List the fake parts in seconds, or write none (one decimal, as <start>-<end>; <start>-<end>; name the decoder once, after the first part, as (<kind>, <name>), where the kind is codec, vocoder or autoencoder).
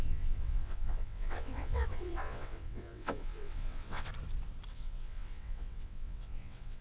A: 0.0-4.1 (vocoder, WaveNeXt); 4.7-6.8